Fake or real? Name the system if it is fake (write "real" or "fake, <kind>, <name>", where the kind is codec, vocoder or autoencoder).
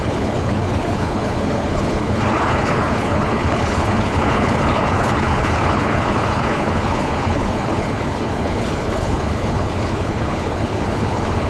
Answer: fake, codec, HILCodec